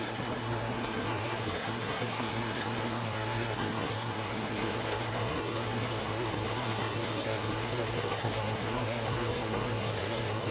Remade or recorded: remade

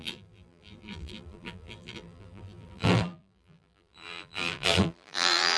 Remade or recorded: remade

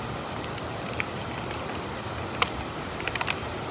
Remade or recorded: recorded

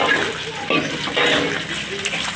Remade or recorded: recorded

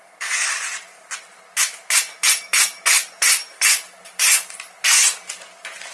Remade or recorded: recorded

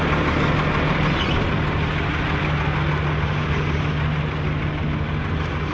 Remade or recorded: recorded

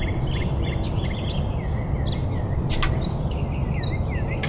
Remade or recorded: recorded